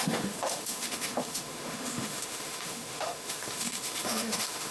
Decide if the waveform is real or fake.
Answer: fake